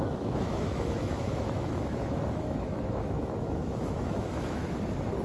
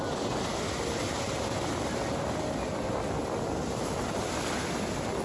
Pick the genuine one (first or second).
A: second